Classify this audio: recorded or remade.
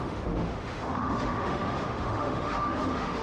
remade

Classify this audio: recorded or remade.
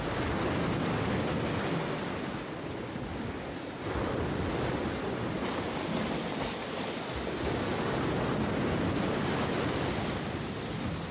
recorded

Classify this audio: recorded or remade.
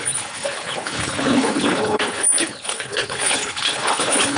remade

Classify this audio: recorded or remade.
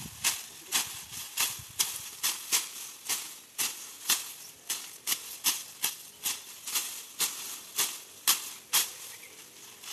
recorded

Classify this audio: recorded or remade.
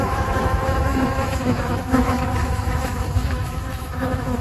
remade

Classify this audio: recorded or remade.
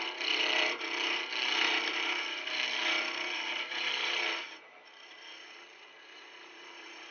remade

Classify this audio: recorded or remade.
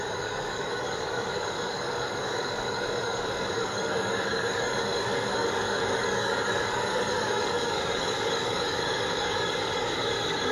remade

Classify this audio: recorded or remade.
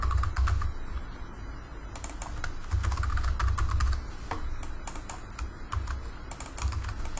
recorded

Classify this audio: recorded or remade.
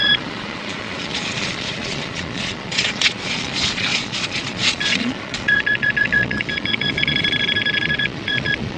remade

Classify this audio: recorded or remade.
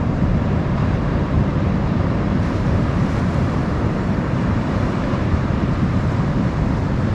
remade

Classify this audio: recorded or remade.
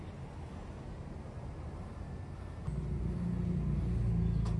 recorded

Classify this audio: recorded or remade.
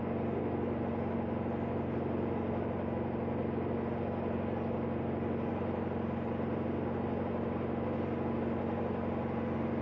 recorded